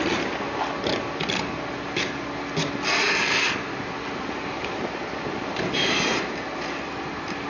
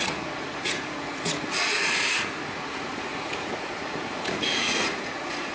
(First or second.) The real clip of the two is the first